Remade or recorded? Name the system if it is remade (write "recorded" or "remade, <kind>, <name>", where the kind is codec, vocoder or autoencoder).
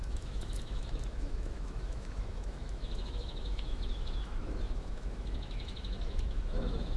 remade, autoencoder, DAC-VAE